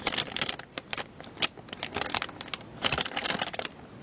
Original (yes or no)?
yes